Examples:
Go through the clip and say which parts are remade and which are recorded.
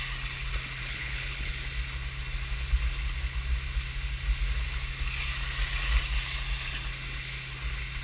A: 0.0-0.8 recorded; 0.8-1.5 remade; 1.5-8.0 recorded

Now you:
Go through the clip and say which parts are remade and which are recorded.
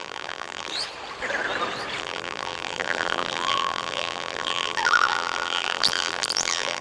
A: 0.0-0.7 remade; 0.7-2.0 recorded; 2.0-6.8 remade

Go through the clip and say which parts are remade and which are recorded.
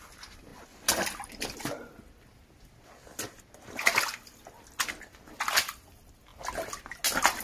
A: 0.0-7.4 recorded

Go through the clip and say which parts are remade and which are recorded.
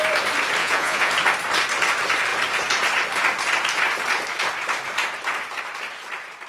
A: 0.0-0.6 recorded; 0.6-1.1 remade; 1.1-6.5 recorded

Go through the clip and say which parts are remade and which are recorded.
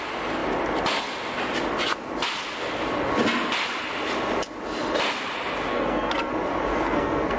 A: 0.0-5.7 recorded; 5.7-6.3 remade; 6.3-6.7 recorded; 6.7-7.4 remade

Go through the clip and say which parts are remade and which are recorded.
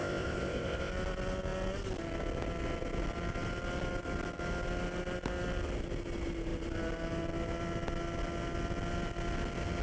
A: 0.0-0.9 remade; 0.9-9.8 recorded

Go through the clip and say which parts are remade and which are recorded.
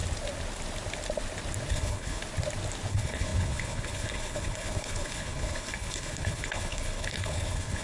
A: 0.0-1.7 recorded; 1.7-2.2 remade; 2.2-2.9 recorded; 2.9-7.8 remade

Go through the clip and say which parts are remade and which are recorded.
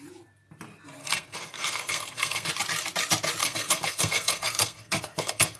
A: 0.0-1.0 recorded; 1.0-2.5 remade; 2.5-3.4 recorded; 3.4-5.6 remade